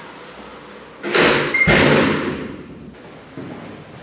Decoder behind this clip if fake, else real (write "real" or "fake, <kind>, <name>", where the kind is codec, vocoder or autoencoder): real